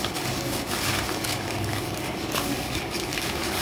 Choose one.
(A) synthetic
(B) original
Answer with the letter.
A